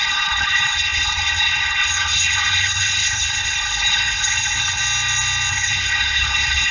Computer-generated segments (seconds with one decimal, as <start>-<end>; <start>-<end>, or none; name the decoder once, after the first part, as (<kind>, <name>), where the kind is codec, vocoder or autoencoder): 0.0-4.8 (codec, HILCodec); 5.5-6.7